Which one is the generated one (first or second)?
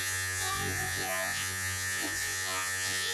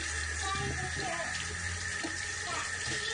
first